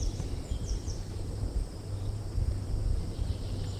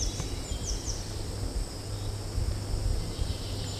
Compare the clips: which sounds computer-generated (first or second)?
first